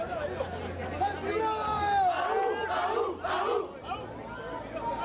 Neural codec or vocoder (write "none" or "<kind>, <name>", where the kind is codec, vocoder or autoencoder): none